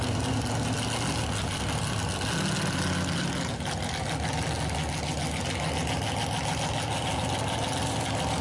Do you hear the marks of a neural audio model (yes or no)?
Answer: no